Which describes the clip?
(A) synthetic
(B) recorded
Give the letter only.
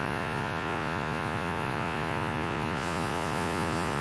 A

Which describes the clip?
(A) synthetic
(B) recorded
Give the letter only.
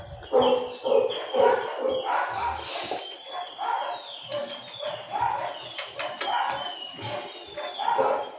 B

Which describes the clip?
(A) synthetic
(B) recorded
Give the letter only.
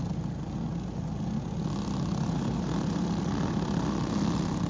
B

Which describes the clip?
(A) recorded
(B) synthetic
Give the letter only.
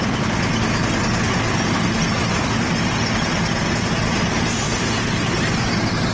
A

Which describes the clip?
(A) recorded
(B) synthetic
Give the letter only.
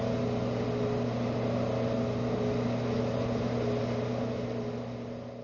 A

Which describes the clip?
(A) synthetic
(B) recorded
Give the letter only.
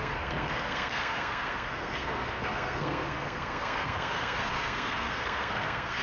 A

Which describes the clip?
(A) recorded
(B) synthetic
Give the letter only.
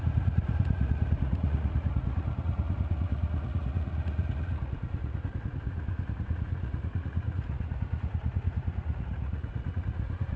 B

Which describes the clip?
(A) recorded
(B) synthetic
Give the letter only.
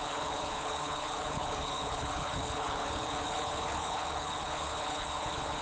B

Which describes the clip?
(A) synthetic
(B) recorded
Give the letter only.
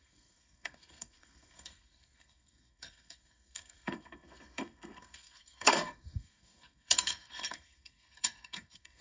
A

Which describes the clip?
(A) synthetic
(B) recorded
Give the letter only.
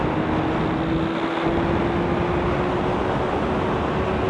B